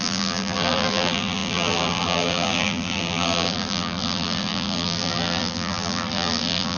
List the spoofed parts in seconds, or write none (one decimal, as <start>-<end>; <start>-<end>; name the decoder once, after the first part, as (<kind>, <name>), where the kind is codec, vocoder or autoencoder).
0.0-6.8 (vocoder, BigVGAN v2)

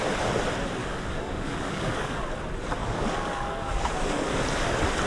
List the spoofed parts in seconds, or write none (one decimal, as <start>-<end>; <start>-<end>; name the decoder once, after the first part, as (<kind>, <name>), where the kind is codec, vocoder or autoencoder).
0.8-2.2 (codec, DAC); 2.8-4.4

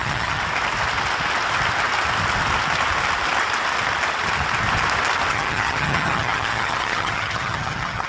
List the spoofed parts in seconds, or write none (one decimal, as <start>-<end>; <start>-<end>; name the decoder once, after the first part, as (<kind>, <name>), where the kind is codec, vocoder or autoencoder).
0.0-0.4 (vocoder, HiFi-GAN); 5.3-8.1

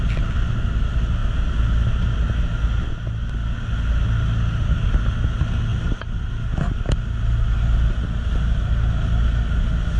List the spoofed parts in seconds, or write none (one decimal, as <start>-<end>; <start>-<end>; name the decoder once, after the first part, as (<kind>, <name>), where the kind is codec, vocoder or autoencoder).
none

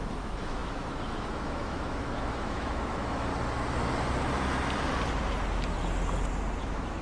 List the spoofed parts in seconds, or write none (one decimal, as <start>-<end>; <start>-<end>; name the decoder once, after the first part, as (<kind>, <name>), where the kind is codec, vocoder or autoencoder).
0.0-3.3 (autoencoder, DAC-VAE); 6.6-7.0

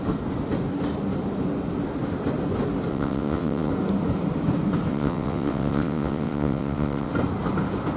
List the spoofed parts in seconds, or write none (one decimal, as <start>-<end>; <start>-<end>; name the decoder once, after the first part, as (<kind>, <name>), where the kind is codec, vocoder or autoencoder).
2.9-3.7 (vocoder, WaveNeXt); 4.9-7.1

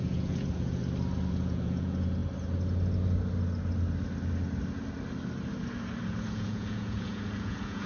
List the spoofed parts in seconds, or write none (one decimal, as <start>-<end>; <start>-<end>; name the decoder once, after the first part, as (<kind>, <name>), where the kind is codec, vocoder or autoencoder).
0.0-0.8 (vocoder, Vocos); 1.3-2.2; 6.0-7.9

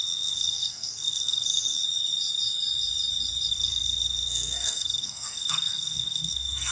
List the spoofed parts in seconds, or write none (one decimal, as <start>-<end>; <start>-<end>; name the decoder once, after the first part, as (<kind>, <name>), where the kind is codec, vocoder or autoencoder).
0.0-1.8 (codec, SNAC); 3.5-6.7